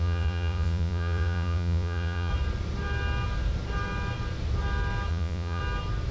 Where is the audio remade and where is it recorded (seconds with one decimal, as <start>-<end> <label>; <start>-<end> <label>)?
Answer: 0.0-2.3 remade; 2.3-5.1 recorded; 5.1-5.6 remade; 5.6-6.1 recorded